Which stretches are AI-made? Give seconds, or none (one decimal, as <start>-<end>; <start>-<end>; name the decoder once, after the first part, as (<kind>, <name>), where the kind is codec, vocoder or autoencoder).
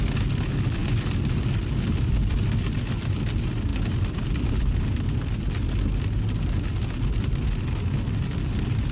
none